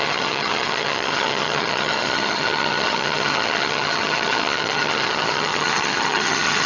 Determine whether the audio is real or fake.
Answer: fake